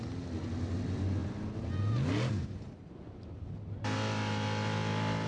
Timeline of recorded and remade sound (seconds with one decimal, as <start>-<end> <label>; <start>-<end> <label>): 0.0-5.3 recorded